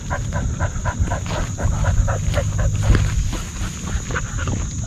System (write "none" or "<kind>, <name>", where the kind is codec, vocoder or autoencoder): none